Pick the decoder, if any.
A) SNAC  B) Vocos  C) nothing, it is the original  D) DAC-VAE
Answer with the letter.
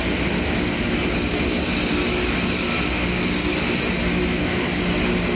C